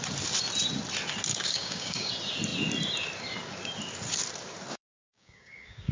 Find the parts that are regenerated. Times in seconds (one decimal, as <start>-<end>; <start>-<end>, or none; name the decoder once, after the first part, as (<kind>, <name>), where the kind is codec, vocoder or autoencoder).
1.3-2.1 (codec, DAC); 4.7-5.9